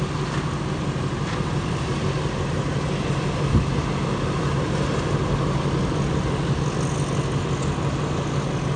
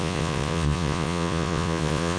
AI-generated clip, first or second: second